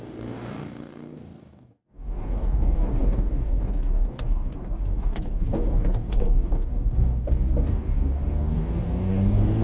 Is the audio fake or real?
fake